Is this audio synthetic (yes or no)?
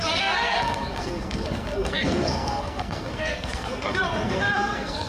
yes